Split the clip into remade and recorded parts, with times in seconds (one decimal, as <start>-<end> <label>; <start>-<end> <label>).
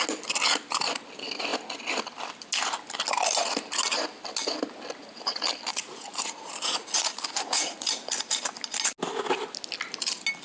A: 0.0-5.7 recorded; 5.7-8.1 remade; 8.1-10.4 recorded